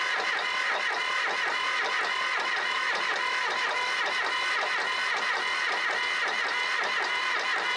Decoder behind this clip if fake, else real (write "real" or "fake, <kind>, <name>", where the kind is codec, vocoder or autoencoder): real